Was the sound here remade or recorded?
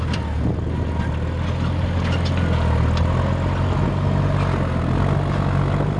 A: recorded